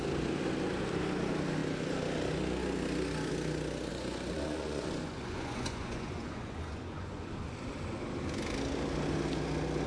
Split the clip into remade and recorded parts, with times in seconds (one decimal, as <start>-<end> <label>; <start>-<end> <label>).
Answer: 0.0-3.9 recorded; 3.9-7.3 remade; 7.3-9.9 recorded